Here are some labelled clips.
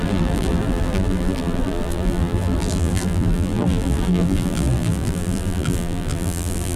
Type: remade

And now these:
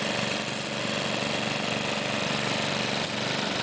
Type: recorded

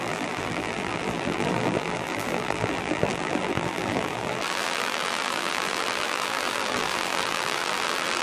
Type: remade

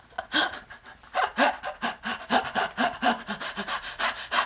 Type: recorded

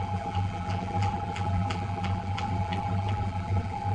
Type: remade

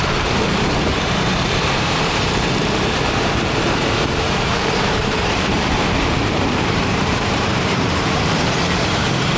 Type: remade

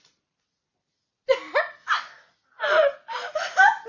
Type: recorded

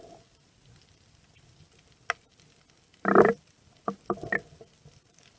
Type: recorded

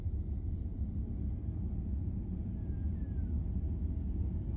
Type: recorded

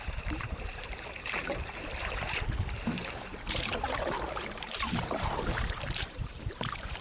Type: remade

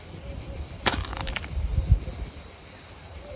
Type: remade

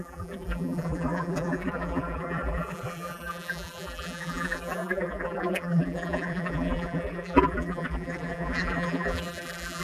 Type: remade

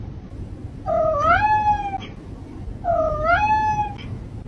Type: recorded